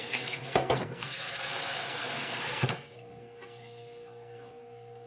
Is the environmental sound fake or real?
fake